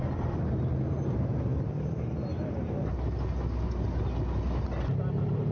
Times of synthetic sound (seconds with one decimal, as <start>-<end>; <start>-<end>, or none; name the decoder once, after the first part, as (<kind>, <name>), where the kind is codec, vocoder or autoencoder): none